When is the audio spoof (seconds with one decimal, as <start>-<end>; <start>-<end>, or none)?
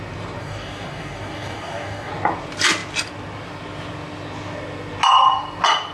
0.4-2.1